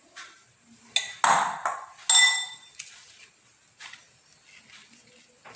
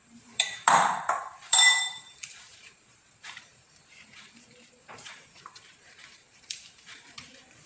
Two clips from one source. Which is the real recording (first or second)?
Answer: first